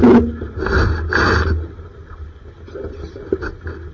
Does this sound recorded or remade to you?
recorded